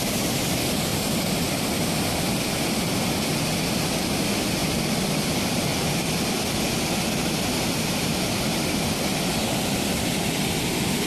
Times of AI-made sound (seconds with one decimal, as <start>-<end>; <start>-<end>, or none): 0.9-3.9; 5.7-8.4